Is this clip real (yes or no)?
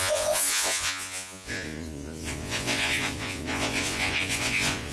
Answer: no